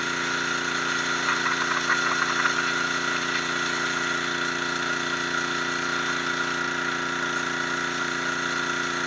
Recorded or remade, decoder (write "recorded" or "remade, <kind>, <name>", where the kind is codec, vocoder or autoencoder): recorded